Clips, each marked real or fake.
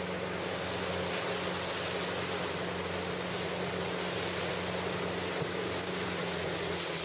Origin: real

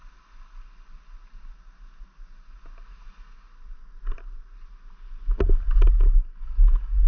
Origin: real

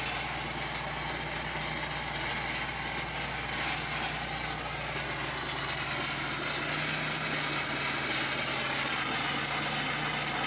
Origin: real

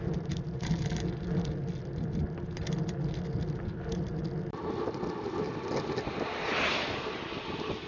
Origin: real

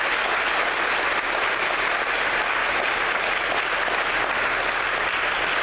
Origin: real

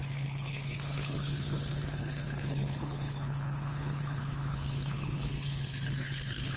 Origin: fake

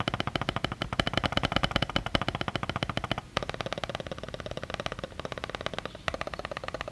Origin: real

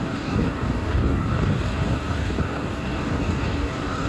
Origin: fake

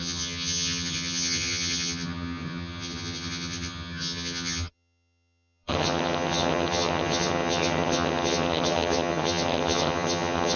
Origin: fake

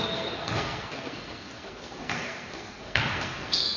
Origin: fake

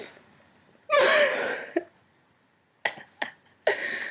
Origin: real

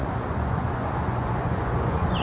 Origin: fake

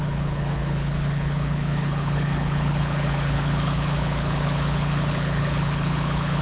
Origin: fake